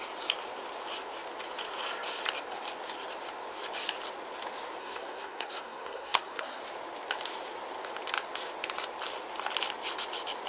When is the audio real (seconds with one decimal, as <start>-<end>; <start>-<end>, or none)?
0.0-4.8; 6.6-10.5